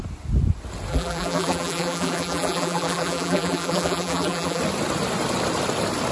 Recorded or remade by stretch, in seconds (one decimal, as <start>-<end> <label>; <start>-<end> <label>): 0.0-0.9 recorded; 0.9-4.6 remade; 4.6-6.1 recorded